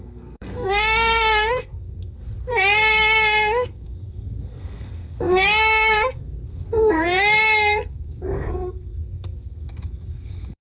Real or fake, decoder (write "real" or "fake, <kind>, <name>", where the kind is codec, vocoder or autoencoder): fake, codec, SNAC